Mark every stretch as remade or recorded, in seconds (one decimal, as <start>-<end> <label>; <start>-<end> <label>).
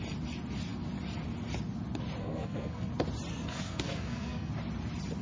0.0-2.2 recorded; 2.2-2.9 remade; 2.9-3.3 recorded; 3.3-4.5 remade; 4.5-5.2 recorded